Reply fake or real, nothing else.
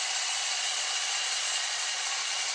fake